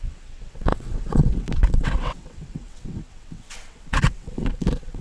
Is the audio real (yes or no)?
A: no